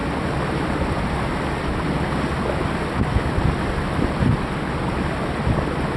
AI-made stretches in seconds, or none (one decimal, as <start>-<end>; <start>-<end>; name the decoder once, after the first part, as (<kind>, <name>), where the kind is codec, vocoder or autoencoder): none